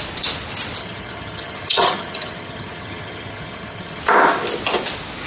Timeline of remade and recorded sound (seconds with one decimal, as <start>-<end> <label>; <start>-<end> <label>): 0.0-0.8 recorded; 0.8-4.0 remade; 4.0-5.3 recorded